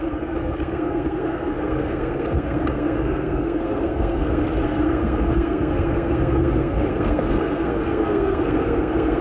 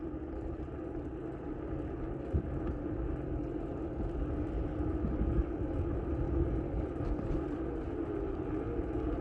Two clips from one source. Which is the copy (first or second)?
first